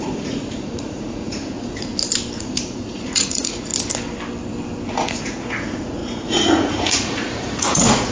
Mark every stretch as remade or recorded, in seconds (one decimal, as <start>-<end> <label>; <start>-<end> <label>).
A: 0.0-1.9 remade; 1.9-2.4 recorded; 2.4-3.7 remade; 3.7-4.9 recorded; 4.9-8.1 remade

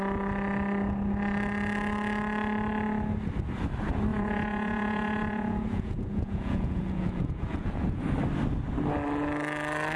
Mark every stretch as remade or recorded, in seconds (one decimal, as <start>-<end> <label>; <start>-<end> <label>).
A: 0.0-4.1 recorded; 4.1-8.0 remade; 8.0-10.0 recorded

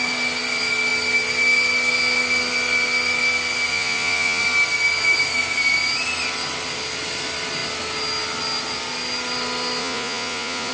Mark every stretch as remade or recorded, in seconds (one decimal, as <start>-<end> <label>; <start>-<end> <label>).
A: 0.0-3.7 recorded; 3.7-4.4 remade; 4.4-9.8 recorded; 9.8-10.7 remade

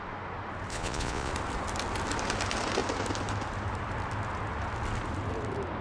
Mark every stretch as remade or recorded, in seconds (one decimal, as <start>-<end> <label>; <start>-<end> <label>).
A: 0.0-0.7 recorded; 0.7-1.3 remade; 1.3-5.8 recorded

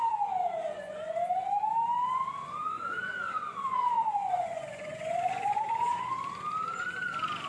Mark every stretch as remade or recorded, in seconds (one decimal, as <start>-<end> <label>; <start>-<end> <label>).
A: 0.0-0.6 recorded; 0.6-1.1 remade; 1.1-2.4 recorded; 2.4-6.1 remade; 6.1-7.5 recorded

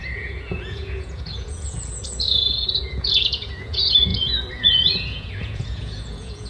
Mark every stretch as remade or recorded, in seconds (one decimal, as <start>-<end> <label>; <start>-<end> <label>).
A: 0.0-6.5 remade